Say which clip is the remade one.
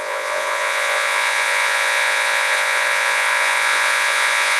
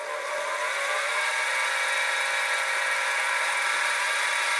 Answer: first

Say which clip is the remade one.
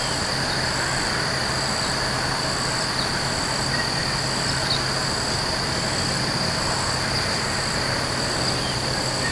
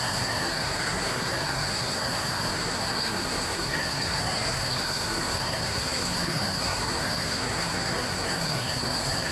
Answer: second